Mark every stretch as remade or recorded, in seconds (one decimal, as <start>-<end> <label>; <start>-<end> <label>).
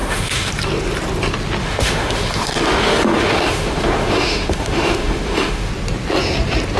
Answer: 0.0-0.5 remade; 0.5-1.6 recorded; 1.6-5.7 remade; 5.7-6.8 recorded